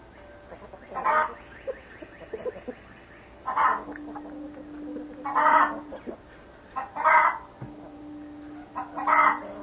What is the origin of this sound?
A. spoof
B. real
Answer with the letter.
B